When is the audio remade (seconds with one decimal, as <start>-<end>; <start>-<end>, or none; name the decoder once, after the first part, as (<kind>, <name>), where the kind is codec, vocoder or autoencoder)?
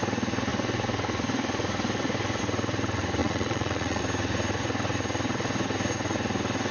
3.2-4.0 (vocoder, Vocos)